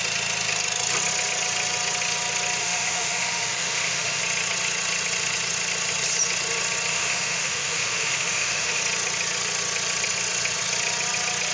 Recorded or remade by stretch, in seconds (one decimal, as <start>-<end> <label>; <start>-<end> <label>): 0.0-2.6 recorded; 2.6-4.2 remade; 4.2-6.9 recorded; 6.9-8.8 remade; 8.8-11.5 recorded